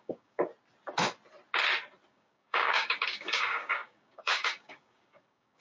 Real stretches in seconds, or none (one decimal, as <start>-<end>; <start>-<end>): 0.5-2.1

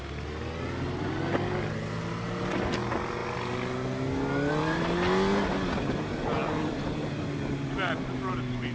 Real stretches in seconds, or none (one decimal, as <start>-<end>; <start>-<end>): 0.0-8.7

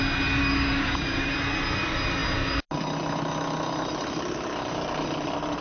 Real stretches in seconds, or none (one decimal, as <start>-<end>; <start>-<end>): 0.0-0.4; 1.3-5.6

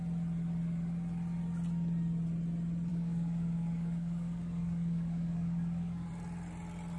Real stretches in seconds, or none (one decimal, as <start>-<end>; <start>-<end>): 0.0-2.9; 6.1-7.0

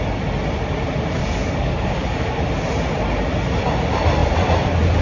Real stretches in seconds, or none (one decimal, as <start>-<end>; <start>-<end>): 0.0-1.2; 2.4-5.0

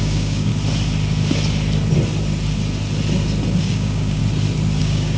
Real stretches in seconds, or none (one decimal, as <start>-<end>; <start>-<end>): 0.5-3.6; 4.2-4.8

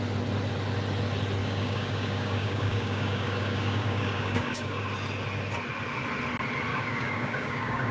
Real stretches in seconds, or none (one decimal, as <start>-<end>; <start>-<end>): 0.0-1.4; 4.8-6.7